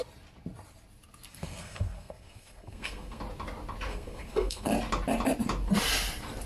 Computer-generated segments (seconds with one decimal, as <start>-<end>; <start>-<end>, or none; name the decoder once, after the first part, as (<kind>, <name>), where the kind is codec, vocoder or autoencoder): 1.3-3.2 (codec, SNAC); 3.9-4.7